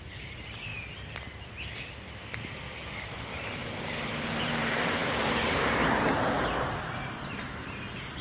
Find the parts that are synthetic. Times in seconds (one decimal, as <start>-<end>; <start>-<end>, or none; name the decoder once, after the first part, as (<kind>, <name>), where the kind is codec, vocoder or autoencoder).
0.0-0.7 (vocoder, BigVGAN v2); 3.3-8.2